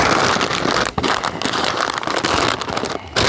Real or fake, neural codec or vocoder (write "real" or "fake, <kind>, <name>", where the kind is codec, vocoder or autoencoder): real